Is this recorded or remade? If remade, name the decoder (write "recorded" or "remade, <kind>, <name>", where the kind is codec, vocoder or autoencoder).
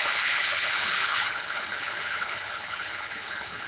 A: remade, codec, HILCodec